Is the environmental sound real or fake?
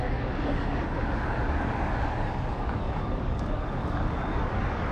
fake